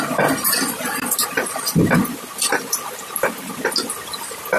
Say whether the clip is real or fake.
real